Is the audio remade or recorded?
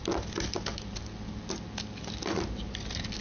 recorded